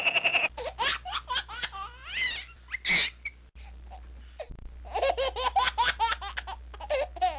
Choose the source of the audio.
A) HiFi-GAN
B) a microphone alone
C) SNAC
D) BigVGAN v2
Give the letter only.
B